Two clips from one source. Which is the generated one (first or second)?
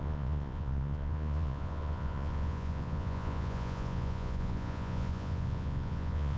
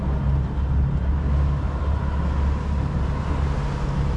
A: first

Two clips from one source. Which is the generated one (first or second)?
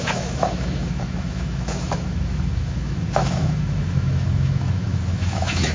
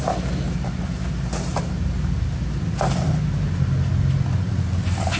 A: first